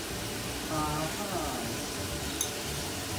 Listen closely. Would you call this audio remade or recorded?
recorded